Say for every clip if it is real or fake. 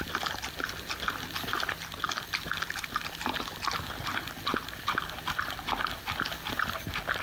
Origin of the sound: real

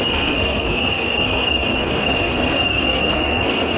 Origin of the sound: fake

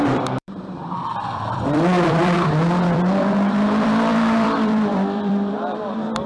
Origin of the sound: fake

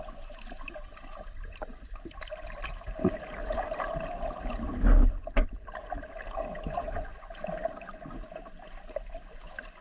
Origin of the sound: real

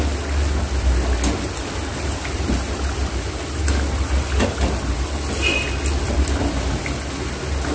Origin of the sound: real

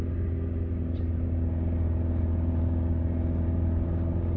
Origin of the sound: real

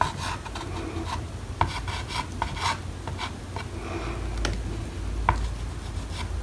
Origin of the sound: real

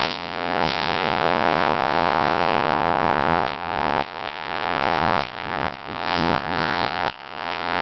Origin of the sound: fake